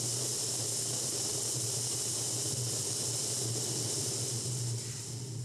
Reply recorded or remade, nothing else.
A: recorded